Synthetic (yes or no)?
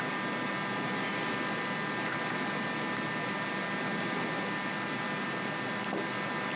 no